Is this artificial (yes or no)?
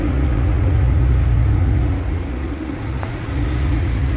yes